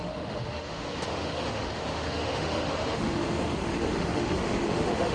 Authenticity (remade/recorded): remade